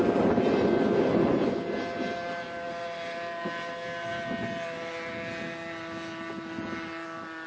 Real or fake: real